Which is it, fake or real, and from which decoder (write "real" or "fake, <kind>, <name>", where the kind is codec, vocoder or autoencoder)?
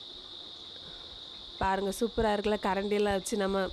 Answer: real